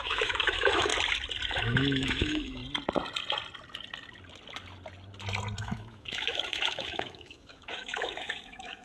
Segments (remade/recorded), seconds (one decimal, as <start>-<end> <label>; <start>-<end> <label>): 0.0-0.9 remade; 0.9-1.5 recorded; 1.5-2.6 remade; 2.6-5.6 recorded; 5.6-8.8 remade